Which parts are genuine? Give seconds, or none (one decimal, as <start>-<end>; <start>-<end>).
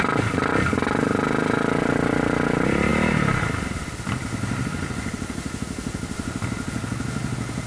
0.0-7.7